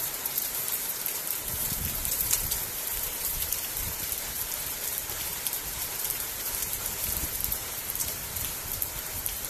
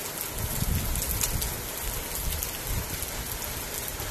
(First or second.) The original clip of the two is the second